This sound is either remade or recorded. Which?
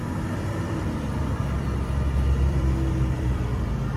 remade